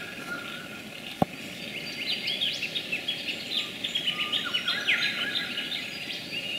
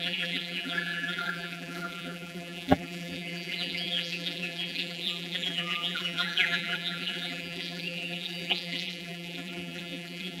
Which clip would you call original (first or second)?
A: first